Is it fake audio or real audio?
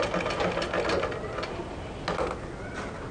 real